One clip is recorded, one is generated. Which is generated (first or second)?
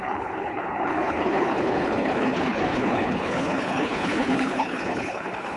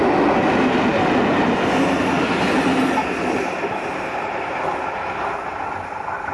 first